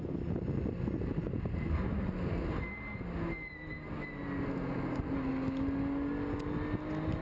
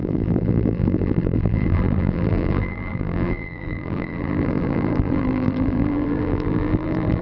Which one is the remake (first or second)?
second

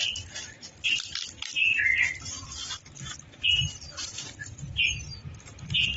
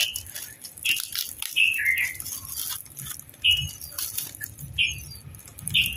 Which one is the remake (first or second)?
first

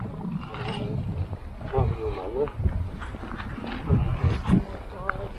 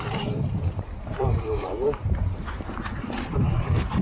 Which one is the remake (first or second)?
second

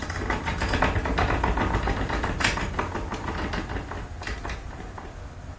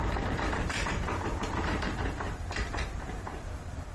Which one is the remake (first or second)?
second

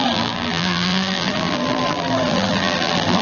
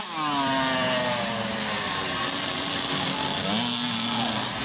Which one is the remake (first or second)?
first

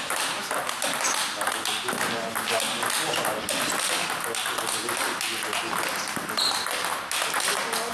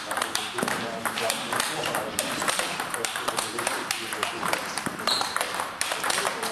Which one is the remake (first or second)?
second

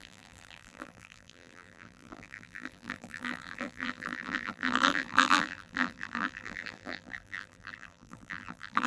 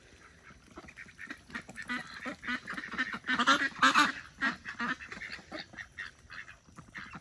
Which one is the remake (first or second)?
first